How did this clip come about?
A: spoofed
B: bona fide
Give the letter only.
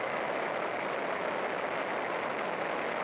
B